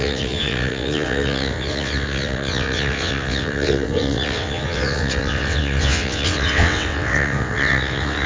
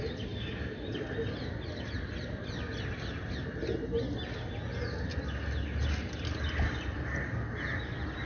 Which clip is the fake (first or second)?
first